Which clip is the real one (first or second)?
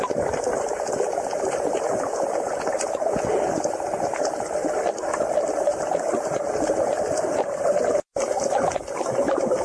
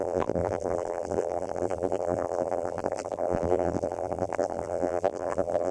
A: first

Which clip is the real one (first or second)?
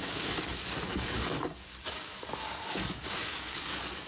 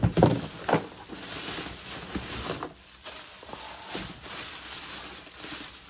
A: second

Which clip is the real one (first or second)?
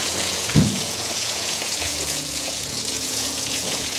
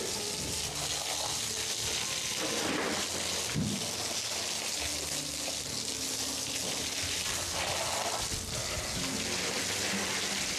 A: second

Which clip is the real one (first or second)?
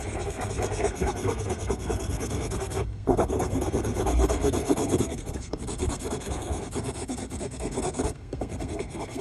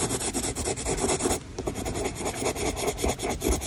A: second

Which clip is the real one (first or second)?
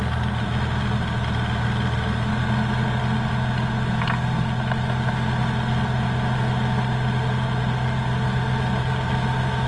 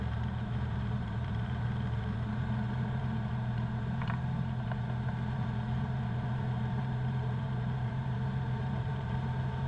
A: first